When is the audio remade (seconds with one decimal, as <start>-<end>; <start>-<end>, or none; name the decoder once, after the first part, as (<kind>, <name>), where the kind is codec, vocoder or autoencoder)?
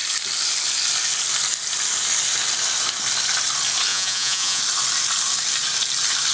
3.9-4.6 (vocoder, Vocos)